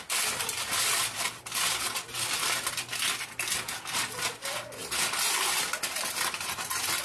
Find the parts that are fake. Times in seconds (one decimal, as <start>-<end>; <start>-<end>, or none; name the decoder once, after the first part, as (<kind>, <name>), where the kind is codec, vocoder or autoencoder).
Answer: none